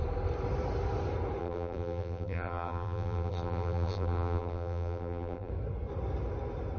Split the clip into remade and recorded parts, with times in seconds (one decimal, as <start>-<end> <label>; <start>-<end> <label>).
0.0-1.4 recorded; 1.4-5.5 remade; 5.5-6.8 recorded